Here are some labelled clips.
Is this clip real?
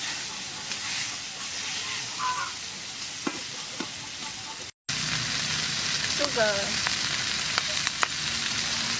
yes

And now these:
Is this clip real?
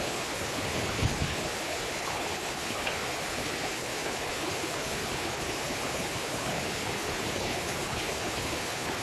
no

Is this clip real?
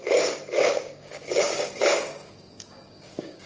no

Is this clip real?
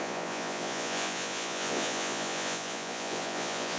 no